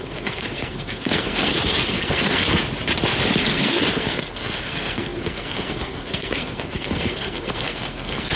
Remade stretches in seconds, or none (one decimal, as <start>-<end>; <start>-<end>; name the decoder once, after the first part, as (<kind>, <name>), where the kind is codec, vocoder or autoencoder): 0.0-2.6 (codec, SNAC); 3.4-8.4

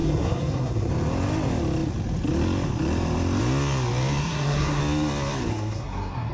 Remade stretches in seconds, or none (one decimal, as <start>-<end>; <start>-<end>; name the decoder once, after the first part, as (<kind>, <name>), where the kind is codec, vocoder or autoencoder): 0.0-0.9 (codec, SNAC); 4.2-4.8; 5.5-6.3

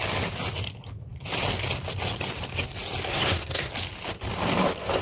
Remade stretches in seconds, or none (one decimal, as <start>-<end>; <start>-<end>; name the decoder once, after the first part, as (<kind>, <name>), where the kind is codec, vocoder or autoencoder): 3.1-3.7 (codec, SNAC)

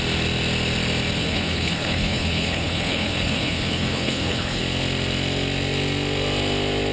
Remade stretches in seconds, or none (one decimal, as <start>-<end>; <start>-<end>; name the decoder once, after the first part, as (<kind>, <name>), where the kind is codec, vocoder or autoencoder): 1.2-4.6 (codec, HILCodec)